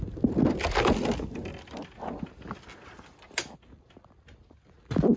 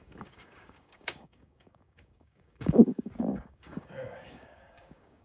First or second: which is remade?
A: second